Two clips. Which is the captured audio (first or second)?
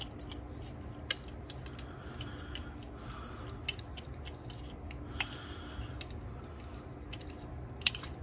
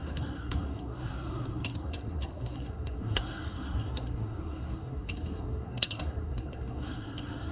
first